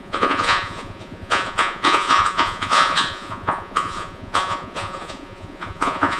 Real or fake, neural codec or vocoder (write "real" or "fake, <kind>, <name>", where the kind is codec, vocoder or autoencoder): fake, vocoder, Vocos